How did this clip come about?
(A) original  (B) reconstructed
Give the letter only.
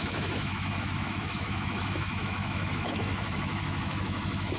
B